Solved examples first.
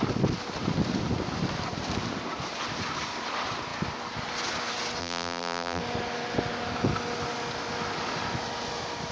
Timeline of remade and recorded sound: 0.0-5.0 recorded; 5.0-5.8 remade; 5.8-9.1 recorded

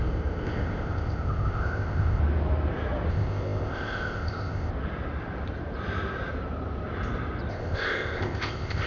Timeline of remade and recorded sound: 0.0-2.2 remade; 2.2-3.1 recorded; 3.1-4.7 remade; 4.7-7.5 recorded; 7.5-8.9 remade

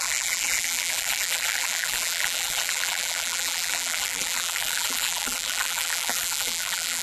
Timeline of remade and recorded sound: 0.0-7.0 remade